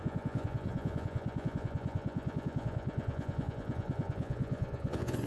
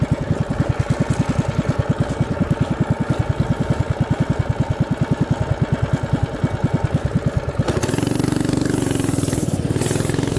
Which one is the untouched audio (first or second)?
second